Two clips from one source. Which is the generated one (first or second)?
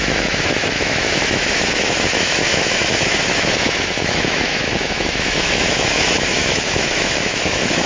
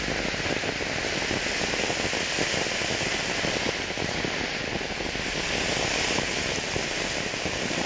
first